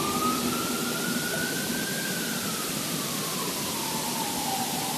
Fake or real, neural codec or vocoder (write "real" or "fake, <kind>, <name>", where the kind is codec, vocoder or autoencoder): real